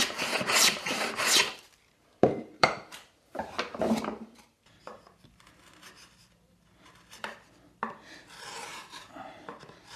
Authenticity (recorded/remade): remade